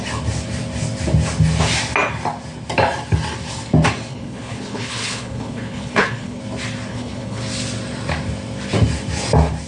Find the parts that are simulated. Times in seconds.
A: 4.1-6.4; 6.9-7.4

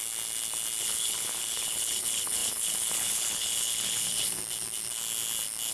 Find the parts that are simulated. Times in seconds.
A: 0.8-4.4

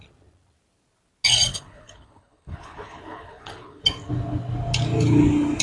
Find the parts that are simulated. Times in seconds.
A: 1.5-3.8

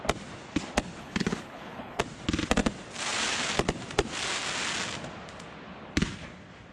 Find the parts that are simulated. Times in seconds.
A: 1.0-2.0

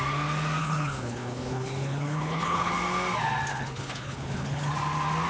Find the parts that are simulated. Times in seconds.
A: 0.6-2.7; 3.5-4.7

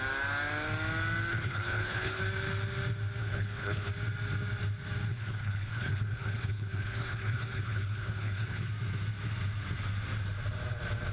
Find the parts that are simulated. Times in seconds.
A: 1.3-2.2; 3.2-3.9; 5.1-8.7

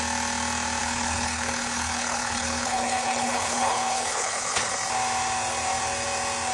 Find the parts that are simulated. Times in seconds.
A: 0.8-4.7